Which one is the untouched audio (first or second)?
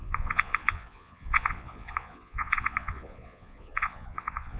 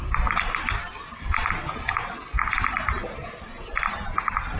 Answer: second